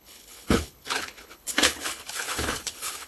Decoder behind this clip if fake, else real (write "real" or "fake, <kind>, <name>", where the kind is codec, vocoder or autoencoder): fake, codec, HILCodec